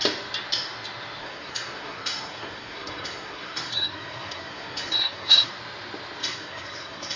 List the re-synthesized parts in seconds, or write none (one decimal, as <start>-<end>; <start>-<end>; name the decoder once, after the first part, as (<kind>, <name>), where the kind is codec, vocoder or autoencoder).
1.2-5.5 (codec, SNAC); 6.2-7.2